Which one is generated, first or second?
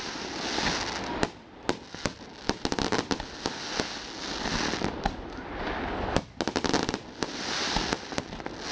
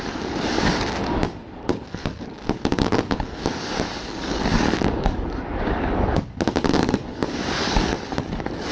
second